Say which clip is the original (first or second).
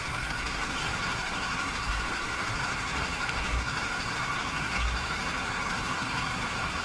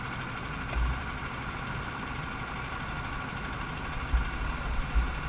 second